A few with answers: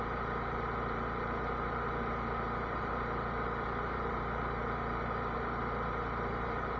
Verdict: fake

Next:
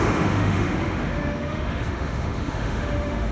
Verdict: fake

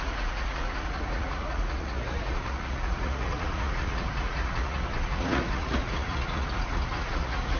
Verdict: fake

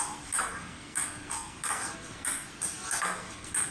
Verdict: fake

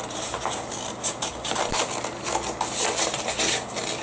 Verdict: real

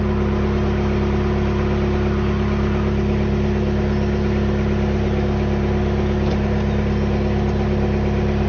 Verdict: real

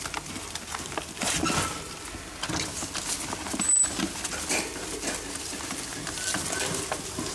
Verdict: real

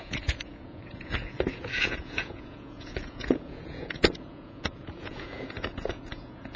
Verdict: fake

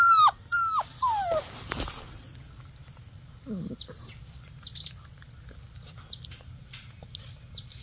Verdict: real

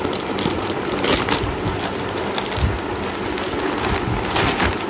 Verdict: real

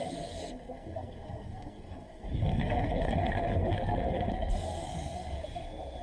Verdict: fake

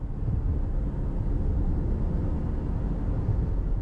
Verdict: real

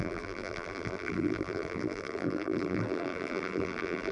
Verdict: fake